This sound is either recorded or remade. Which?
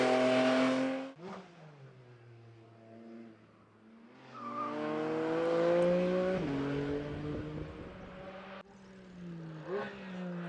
recorded